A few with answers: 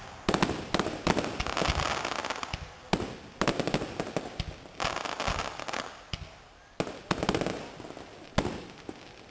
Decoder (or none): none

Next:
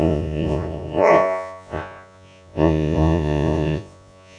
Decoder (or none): vocoder, Vocos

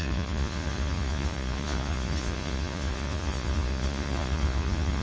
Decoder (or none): vocoder, Vocos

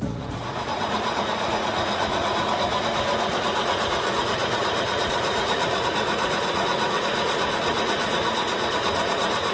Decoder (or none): vocoder, Vocos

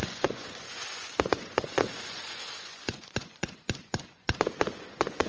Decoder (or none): vocoder, Vocos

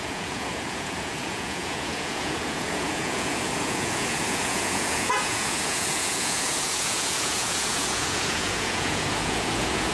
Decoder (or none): vocoder, Vocos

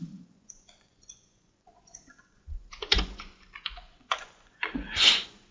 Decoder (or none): vocoder, Vocos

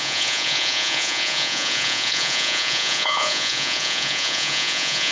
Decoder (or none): vocoder, Vocos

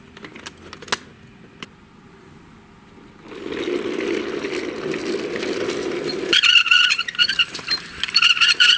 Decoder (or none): none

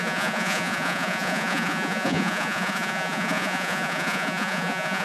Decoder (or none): vocoder, Vocos